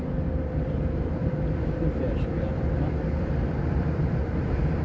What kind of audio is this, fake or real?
fake